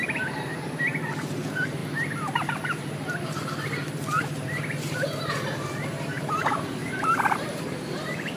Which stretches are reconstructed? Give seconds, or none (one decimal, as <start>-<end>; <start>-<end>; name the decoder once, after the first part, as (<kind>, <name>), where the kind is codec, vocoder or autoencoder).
0.0-8.4 (vocoder, BigVGAN v2)